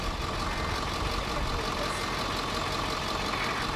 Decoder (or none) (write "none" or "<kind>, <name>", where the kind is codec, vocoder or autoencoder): none